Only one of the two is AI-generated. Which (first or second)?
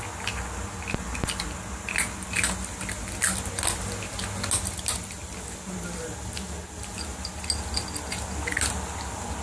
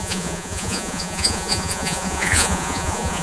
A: second